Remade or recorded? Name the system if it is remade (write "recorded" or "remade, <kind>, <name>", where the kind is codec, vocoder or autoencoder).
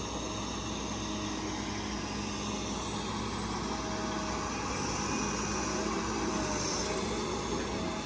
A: recorded